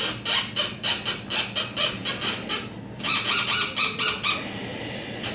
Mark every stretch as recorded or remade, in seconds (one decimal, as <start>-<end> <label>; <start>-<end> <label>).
0.0-5.3 recorded